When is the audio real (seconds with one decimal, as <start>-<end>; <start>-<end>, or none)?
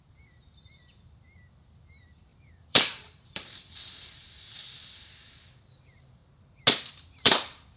6.2-6.9